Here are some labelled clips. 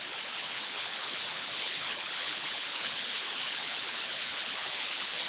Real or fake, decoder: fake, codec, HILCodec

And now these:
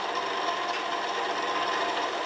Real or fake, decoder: real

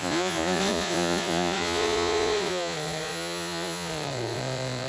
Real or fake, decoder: fake, vocoder, Vocos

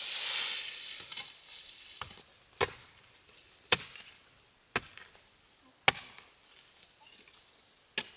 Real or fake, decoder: real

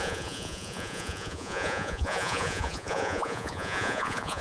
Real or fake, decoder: fake, vocoder, Vocos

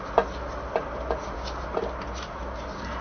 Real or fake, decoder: real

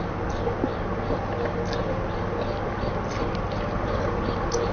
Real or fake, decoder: real